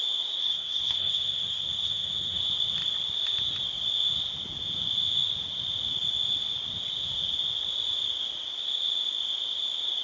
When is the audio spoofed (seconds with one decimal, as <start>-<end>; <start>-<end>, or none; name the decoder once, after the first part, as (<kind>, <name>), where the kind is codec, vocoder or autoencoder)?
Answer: 0.4-2.4 (codec, SNAC)